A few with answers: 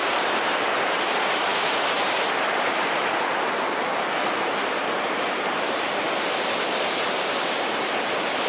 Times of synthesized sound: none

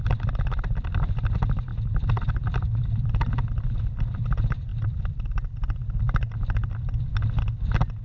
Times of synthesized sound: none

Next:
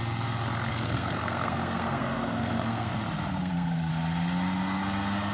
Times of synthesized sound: 0.7-2.9 (codec, SNAC); 3.4-3.9

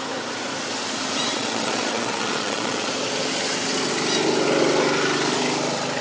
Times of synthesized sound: 1.3-2.9 (vocoder, Vocos)

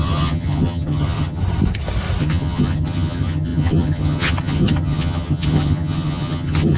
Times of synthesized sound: 0.0-1.4 (vocoder, HiFi-GAN); 2.2-6.8